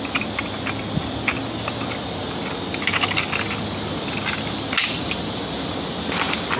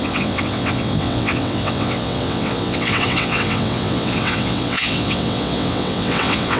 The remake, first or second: second